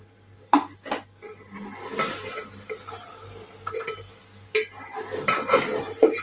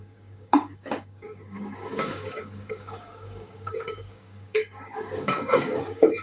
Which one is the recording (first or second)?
first